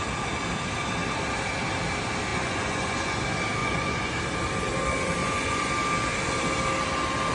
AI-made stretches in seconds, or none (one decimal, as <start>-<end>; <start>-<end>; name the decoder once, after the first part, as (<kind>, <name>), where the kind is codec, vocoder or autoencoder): 2.3-3.2 (vocoder, Vocos); 3.6-4.2; 5.2-5.7